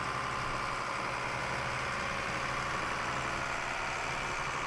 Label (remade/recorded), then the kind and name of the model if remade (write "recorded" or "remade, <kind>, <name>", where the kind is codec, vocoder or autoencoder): recorded